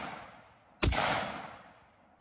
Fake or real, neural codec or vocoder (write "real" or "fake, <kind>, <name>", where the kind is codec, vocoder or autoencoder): real